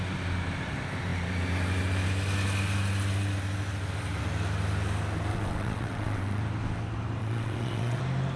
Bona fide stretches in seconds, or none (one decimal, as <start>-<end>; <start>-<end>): 0.0-5.3; 6.4-7.2; 8.0-8.4